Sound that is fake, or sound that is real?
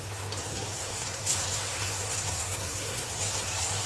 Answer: fake